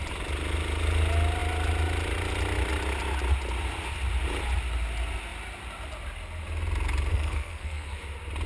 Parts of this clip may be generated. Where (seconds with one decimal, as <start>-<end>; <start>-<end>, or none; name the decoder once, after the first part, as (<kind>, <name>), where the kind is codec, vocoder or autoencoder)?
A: 7.1-8.0 (codec, SNAC)